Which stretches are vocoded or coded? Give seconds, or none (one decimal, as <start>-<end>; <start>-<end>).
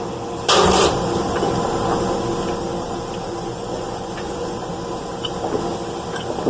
3.3-4.7